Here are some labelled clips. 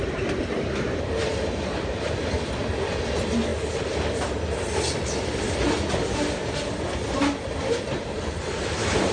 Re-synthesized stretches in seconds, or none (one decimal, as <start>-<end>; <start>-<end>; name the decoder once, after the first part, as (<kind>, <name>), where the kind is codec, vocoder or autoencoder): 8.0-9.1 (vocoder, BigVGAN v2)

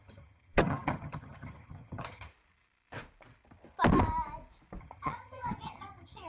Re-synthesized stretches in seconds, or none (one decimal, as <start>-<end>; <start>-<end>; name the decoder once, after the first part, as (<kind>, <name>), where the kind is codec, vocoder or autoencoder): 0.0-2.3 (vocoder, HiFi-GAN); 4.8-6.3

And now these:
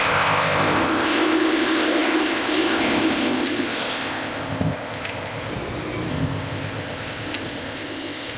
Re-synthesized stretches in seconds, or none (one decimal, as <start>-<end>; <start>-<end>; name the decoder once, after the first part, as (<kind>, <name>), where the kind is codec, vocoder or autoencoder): 0.0-5.5 (codec, ZipCodec); 6.1-8.4

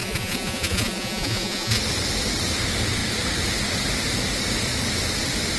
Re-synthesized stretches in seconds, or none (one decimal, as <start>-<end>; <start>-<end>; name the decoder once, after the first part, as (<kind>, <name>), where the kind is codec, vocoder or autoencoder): 0.0-1.8 (vocoder, Vocos)